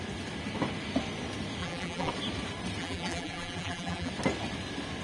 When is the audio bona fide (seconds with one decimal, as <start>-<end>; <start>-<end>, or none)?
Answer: 0.0-1.6; 2.1-2.8; 4.1-5.0